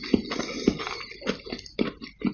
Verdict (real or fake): real